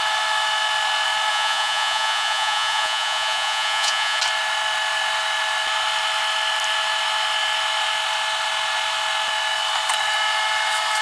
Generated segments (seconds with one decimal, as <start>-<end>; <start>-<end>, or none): 1.3-4.2